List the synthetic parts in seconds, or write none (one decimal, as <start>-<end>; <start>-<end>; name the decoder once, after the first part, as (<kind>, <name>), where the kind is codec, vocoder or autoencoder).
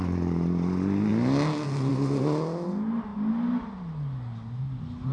none